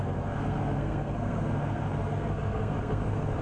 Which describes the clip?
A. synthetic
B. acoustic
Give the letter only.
A